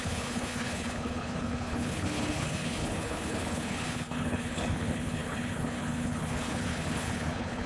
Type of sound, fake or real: fake